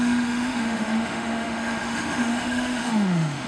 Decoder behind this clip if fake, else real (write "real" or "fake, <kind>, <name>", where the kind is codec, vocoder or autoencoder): fake, autoencoder, DAC-VAE